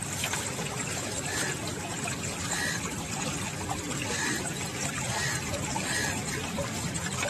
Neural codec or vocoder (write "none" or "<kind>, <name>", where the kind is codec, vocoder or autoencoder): none